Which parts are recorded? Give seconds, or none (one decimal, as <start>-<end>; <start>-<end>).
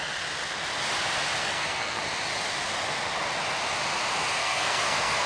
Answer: 0.0-1.4; 2.0-4.4